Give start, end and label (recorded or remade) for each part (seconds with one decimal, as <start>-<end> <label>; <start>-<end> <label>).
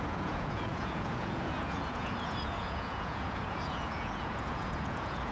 0.0-5.3 remade